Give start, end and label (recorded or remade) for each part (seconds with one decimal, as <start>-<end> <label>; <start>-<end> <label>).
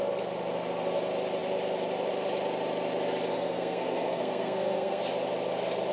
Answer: 0.0-3.3 recorded; 3.3-5.0 remade; 5.0-5.9 recorded